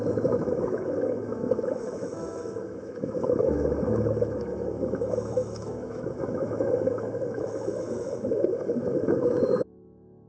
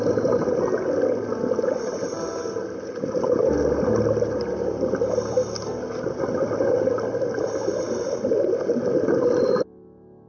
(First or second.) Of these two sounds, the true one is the second